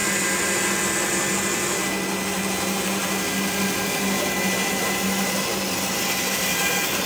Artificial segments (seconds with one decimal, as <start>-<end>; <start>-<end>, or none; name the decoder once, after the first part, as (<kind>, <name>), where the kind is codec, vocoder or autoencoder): none

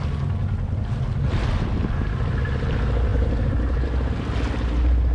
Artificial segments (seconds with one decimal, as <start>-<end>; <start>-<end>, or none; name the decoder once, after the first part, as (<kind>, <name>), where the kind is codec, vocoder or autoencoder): 3.1-4.1 (vocoder, BigVGAN v2)

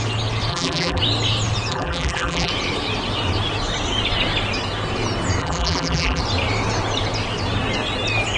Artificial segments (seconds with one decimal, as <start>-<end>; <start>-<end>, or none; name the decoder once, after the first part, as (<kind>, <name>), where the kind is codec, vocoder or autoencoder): 0.5-1.0 (vocoder, BigVGAN v2); 1.7-2.5; 5.4-6.2

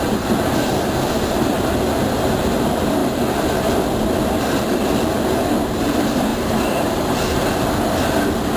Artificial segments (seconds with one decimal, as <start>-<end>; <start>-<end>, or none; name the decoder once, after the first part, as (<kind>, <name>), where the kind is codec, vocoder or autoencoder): 6.3-7.2 (vocoder, BigVGAN v2)